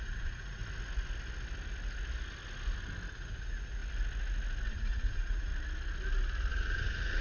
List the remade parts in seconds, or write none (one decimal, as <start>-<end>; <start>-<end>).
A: 0.0-0.6; 3.1-3.8; 4.7-5.5; 6.5-7.2